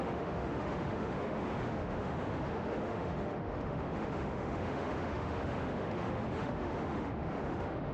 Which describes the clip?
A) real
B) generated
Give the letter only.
B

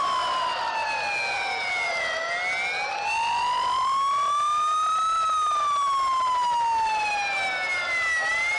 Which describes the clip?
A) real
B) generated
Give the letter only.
A